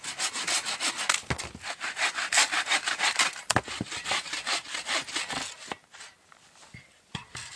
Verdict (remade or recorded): recorded